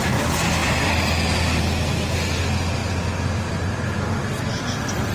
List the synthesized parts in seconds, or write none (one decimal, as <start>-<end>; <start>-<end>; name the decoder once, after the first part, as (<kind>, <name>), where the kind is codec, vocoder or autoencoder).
0.6-1.6 (vocoder, BigVGAN v2)